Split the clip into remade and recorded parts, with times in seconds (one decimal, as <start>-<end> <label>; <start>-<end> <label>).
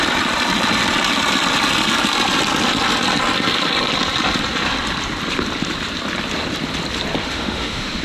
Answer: 0.0-7.2 recorded; 7.2-8.0 remade